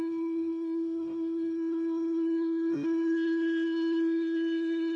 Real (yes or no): no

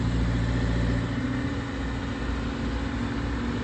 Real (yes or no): yes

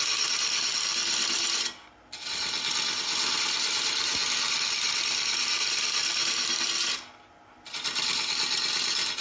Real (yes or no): yes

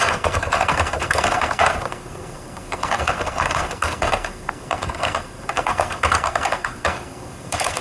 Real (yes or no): no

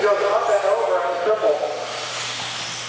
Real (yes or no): yes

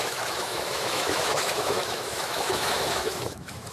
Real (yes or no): no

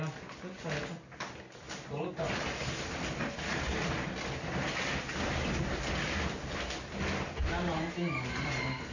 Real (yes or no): yes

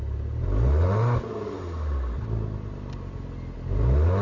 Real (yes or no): yes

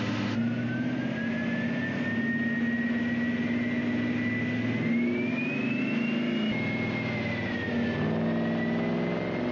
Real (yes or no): yes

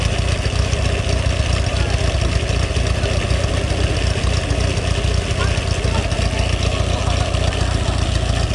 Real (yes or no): yes